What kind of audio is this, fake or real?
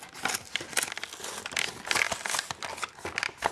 real